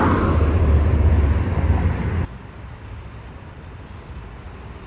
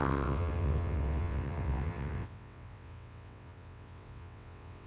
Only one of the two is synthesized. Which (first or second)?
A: second